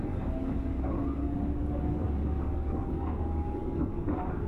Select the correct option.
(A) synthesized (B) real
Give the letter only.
A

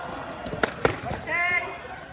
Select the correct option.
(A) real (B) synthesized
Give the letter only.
A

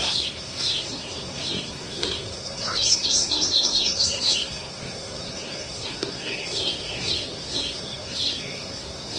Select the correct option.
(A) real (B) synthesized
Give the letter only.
B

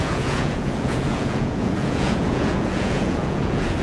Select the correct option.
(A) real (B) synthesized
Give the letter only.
B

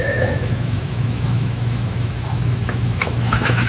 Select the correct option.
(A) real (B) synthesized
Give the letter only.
B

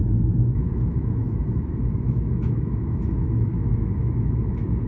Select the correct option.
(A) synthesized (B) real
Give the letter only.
A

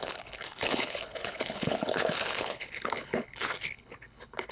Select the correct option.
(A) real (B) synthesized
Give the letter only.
B